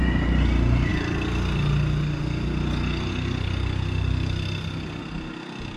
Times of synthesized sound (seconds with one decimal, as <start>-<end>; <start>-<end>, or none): none